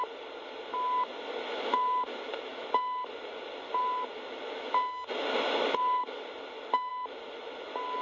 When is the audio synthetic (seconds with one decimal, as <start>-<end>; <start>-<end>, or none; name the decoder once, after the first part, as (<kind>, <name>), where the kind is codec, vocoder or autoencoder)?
none